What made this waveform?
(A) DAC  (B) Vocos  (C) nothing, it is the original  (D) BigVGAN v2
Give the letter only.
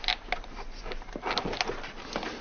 C